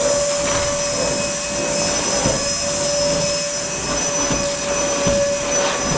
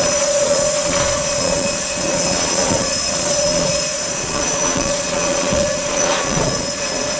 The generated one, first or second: second